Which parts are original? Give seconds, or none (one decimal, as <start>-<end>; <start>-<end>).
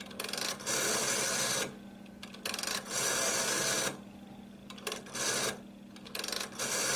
0.0-7.0